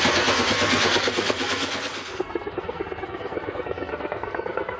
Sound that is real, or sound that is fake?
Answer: fake